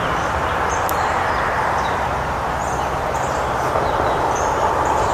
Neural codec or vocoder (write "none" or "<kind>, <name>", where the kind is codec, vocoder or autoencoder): none